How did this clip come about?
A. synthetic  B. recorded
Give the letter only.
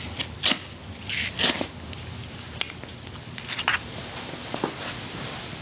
B